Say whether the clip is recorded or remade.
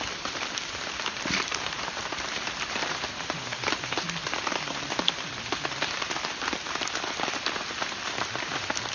remade